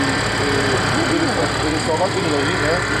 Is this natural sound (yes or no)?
yes